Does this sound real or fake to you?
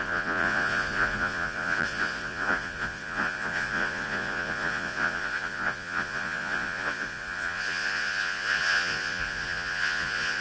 fake